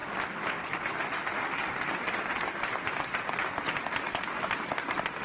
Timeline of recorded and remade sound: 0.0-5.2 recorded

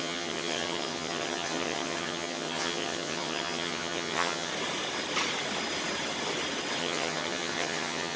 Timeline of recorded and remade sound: 0.0-4.5 remade; 4.5-6.8 recorded; 6.8-8.2 remade

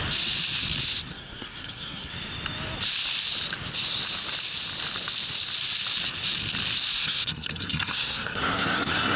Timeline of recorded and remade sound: 0.0-1.1 recorded; 1.1-2.1 remade; 2.1-7.0 recorded; 7.0-9.2 remade

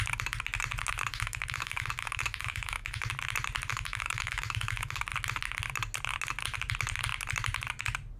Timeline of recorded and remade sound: 0.0-1.1 recorded; 1.1-3.1 remade; 3.1-3.7 recorded; 3.7-5.0 remade; 5.0-8.2 recorded

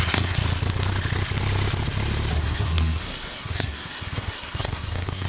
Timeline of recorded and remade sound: 0.0-0.4 remade; 0.4-2.3 recorded; 2.3-5.3 remade

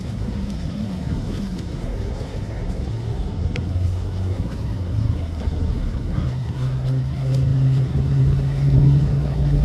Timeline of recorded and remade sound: 0.0-9.6 remade

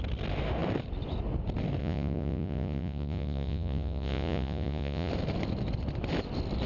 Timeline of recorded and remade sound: 0.0-1.8 recorded; 1.8-5.1 remade; 5.1-6.7 recorded

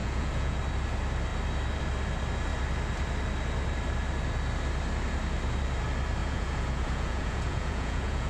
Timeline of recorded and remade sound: 0.0-0.6 remade; 0.6-6.2 recorded; 6.2-8.3 remade